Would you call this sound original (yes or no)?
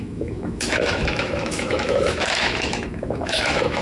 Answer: no